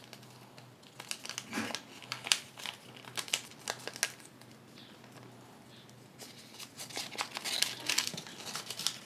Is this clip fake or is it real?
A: real